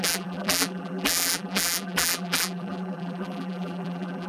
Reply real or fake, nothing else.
fake